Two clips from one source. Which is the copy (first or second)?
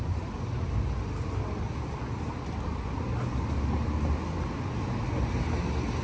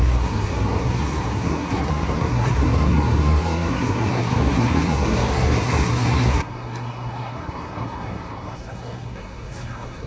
second